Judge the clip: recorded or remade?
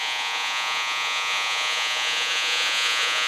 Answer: remade